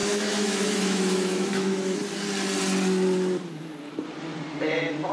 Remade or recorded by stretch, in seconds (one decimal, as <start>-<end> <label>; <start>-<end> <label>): 0.0-2.0 remade; 2.0-5.1 recorded